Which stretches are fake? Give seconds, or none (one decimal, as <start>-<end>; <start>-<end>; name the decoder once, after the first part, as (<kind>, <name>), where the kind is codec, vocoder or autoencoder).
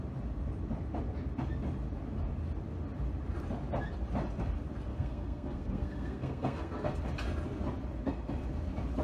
4.9-7.0 (codec, SNAC)